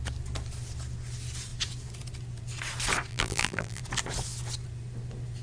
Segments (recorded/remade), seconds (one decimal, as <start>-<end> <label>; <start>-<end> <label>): 0.0-3.1 recorded; 3.1-3.8 remade; 3.8-5.4 recorded